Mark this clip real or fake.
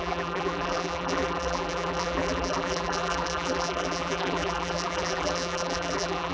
fake